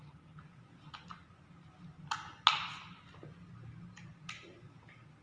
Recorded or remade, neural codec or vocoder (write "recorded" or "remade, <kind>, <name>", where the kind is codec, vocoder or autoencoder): recorded